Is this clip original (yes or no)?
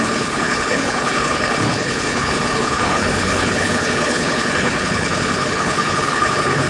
no